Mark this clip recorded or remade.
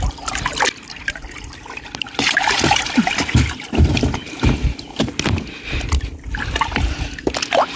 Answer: recorded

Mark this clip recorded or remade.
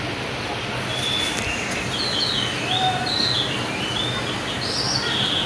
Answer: recorded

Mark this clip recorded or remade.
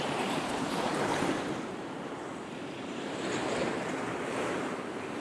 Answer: remade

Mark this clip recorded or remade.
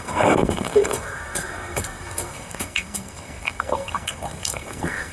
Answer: remade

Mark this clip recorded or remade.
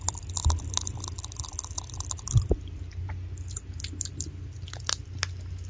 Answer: recorded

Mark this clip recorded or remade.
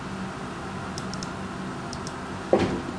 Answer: recorded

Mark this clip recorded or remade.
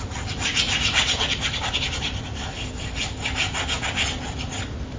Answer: recorded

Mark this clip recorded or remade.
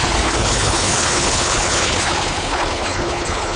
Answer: remade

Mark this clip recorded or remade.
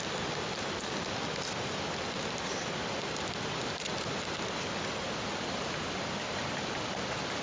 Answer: recorded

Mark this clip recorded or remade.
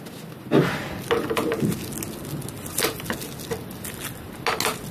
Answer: recorded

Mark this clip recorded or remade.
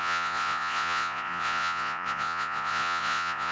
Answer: remade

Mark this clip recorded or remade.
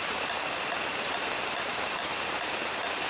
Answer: remade